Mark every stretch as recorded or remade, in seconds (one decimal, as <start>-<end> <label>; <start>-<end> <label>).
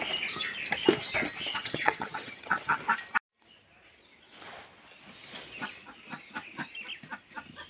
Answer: 0.0-1.5 recorded; 1.5-2.8 remade; 2.8-7.7 recorded